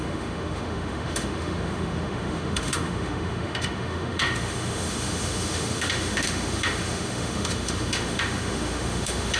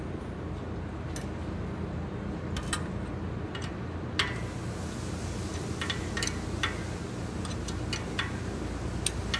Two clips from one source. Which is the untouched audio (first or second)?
second